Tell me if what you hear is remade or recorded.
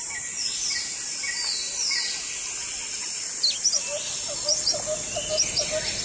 recorded